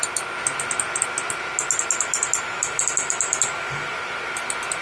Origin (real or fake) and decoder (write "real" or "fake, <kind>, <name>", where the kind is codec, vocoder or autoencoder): real